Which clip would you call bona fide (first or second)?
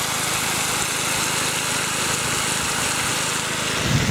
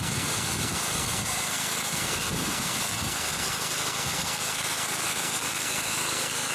first